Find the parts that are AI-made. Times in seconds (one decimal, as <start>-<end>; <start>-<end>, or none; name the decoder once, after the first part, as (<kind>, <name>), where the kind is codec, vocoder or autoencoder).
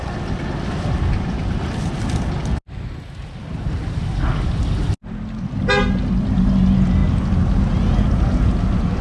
none